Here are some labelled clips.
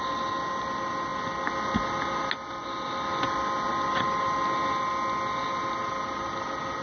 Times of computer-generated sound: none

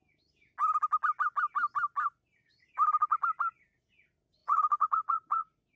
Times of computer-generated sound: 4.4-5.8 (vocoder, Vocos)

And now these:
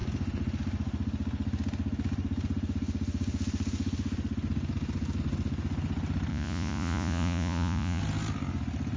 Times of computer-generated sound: 6.3-8.0 (vocoder, Vocos)

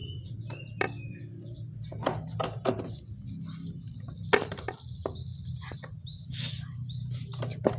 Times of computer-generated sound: none

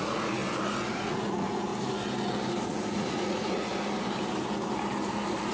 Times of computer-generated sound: 0.0-0.4 (vocoder, Vocos); 0.9-1.7; 2.7-3.7

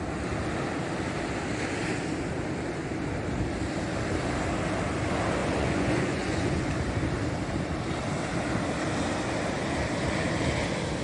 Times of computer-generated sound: 5.4-6.7 (vocoder, Vocos)

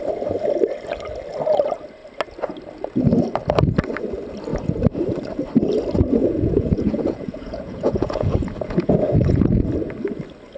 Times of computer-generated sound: 6.2-9.7 (vocoder, Vocos)